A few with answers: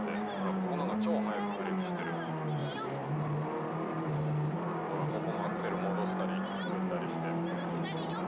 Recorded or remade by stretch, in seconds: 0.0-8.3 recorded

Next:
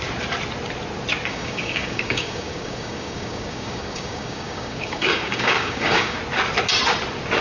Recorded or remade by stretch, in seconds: 0.0-1.3 recorded; 1.3-6.2 remade; 6.2-7.4 recorded

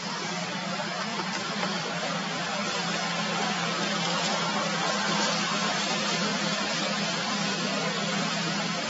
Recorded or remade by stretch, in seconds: 0.0-1.1 recorded; 1.1-2.2 remade; 2.2-8.9 recorded

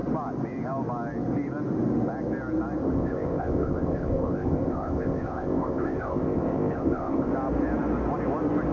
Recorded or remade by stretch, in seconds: 0.0-2.8 recorded; 2.8-7.3 remade; 7.3-8.7 recorded

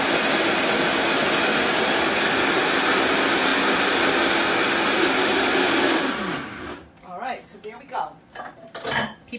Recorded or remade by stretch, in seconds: 0.0-9.4 recorded

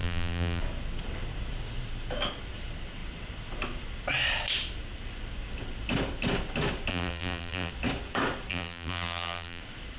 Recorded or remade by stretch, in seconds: 0.0-0.6 remade; 0.6-6.9 recorded; 6.9-7.7 remade; 7.7-8.5 recorded; 8.5-9.6 remade; 9.6-10.0 recorded

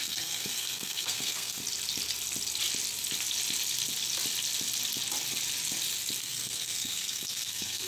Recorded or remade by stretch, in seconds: 0.0-1.6 remade; 1.6-6.2 recorded; 6.2-7.9 remade